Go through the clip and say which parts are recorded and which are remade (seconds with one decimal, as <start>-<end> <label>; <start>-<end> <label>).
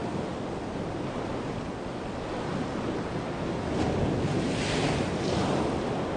0.0-6.2 recorded